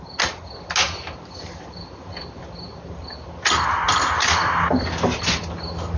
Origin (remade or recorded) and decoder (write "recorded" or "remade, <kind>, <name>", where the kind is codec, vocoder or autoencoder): recorded